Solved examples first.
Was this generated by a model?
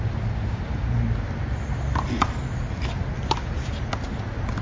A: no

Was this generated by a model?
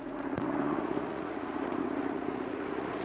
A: yes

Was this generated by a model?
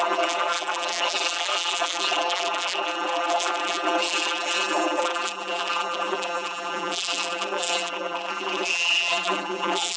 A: yes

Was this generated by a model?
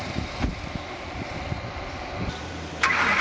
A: yes